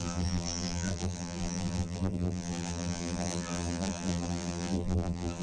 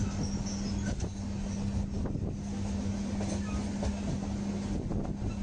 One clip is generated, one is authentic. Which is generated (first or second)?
first